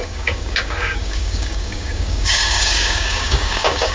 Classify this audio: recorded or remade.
remade